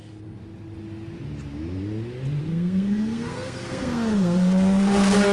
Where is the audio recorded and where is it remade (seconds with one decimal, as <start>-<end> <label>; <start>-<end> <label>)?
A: 0.0-2.4 recorded; 2.4-5.3 remade